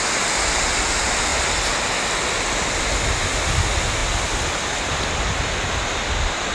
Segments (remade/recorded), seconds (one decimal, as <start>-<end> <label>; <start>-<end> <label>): 0.0-6.5 recorded